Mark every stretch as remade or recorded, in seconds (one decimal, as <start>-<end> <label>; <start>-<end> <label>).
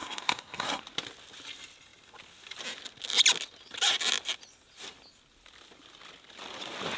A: 0.0-0.8 remade; 0.8-7.0 recorded